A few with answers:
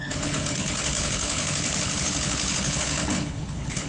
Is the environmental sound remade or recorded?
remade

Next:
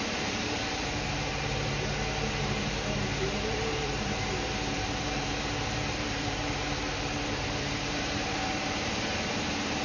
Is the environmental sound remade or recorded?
remade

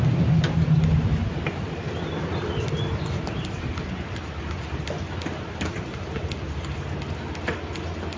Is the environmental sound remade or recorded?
recorded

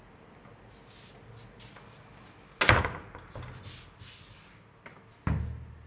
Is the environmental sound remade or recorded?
recorded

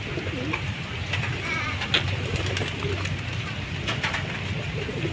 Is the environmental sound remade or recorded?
recorded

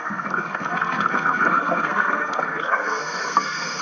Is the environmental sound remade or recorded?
remade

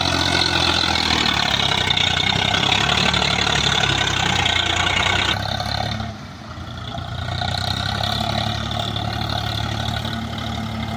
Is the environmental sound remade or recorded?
recorded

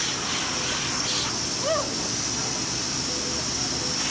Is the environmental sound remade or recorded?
recorded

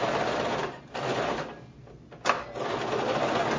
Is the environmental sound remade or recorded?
recorded